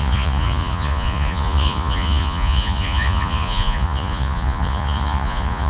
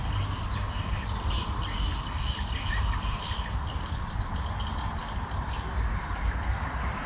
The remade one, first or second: first